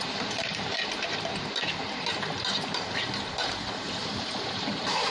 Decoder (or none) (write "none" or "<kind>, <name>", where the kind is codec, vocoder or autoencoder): vocoder, BigVGAN v2